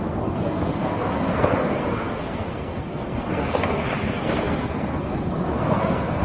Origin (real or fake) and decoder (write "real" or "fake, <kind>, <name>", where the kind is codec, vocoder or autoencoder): fake, codec, SNAC